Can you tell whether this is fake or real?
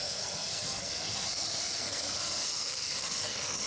fake